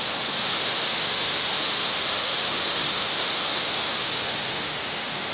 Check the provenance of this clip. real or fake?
fake